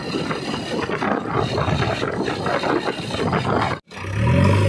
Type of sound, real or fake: real